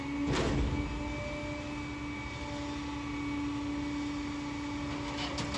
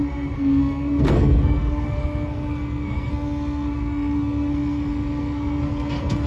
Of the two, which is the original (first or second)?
first